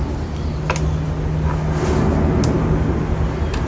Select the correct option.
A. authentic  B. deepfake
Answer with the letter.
A